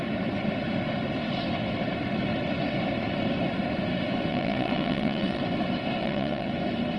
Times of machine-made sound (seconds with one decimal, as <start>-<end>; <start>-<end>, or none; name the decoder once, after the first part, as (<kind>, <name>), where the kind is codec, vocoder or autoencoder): 4.3-5.4 (vocoder, WaveNeXt); 6.0-6.5